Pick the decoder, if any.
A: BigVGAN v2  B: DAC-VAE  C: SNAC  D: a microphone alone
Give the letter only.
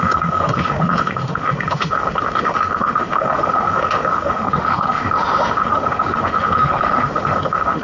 B